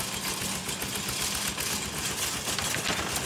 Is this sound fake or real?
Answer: real